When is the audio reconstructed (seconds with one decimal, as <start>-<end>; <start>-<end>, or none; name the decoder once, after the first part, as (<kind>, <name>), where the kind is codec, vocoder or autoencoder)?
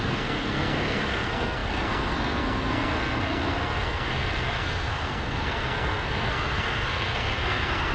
0.0-7.9 (codec, SNAC)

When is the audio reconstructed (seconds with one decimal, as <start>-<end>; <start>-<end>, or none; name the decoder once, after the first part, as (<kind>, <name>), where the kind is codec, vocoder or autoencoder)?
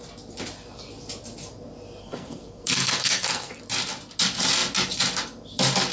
2.0-3.6 (codec, SNAC)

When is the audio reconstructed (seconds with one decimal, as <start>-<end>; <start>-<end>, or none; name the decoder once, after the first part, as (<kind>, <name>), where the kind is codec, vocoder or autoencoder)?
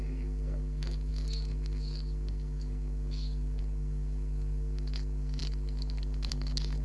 0.0-6.8 (codec, SNAC)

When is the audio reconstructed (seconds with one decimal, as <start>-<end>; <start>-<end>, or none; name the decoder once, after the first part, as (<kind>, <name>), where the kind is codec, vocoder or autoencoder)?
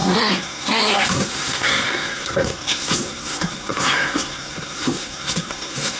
0.0-6.0 (codec, SNAC)